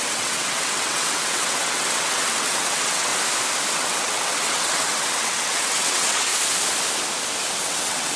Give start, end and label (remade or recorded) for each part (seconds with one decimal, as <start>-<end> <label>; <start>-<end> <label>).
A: 0.0-3.1 remade; 3.1-3.7 recorded; 3.7-6.3 remade; 6.3-7.6 recorded; 7.6-8.2 remade